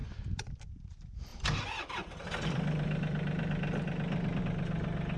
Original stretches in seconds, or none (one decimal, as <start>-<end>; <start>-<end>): 0.7-1.3; 4.4-5.2